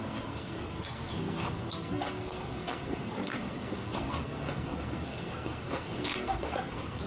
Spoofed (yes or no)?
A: yes